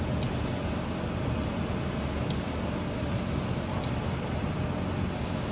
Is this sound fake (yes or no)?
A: no